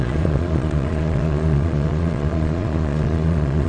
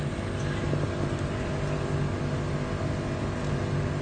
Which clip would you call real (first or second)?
second